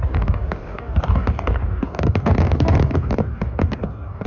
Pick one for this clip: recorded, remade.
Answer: remade